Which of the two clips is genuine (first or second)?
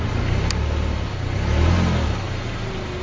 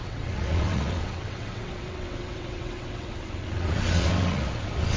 first